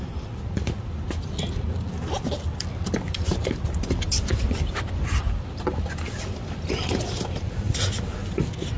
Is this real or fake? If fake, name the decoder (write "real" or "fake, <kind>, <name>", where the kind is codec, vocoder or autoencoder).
real